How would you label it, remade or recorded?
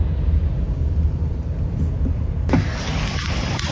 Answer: recorded